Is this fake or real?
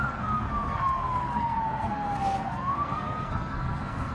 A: fake